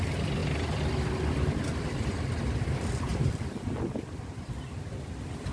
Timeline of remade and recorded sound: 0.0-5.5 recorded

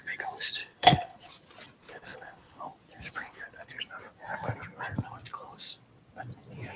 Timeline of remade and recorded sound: 0.0-0.6 recorded; 0.6-1.3 remade; 1.3-1.8 recorded; 1.8-2.6 remade; 2.6-3.2 recorded; 3.2-3.8 remade; 3.8-6.8 recorded

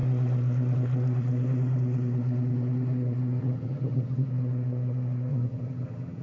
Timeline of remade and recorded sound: 0.0-3.4 recorded; 3.4-4.3 remade; 4.3-5.3 recorded; 5.3-6.2 remade

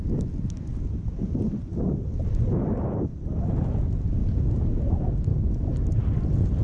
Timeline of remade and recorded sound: 0.0-6.6 recorded

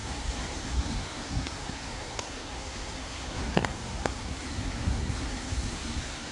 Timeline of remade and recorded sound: 0.0-6.3 remade

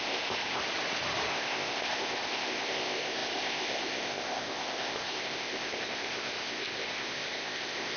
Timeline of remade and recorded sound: 0.0-0.6 remade; 0.6-1.3 recorded; 1.3-8.0 remade

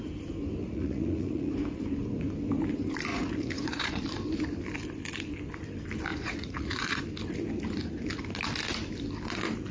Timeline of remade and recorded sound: 0.0-0.6 recorded; 0.6-1.5 remade; 1.5-3.1 recorded; 3.1-4.0 remade; 4.0-6.1 recorded; 6.1-7.0 remade; 7.0-9.7 recorded

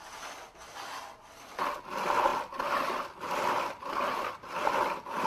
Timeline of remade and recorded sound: 0.0-5.3 recorded